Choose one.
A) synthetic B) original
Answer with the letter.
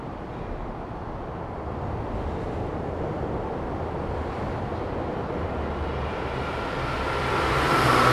A